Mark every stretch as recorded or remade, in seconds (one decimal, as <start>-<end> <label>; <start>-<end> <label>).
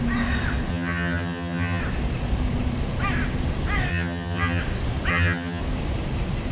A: 0.0-0.7 recorded; 0.7-1.8 remade; 1.8-3.9 recorded; 3.9-4.6 remade; 4.6-5.1 recorded; 5.1-5.6 remade; 5.6-6.5 recorded